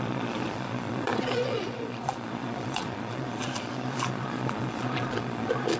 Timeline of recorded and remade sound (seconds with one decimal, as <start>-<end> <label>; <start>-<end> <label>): 0.0-5.8 remade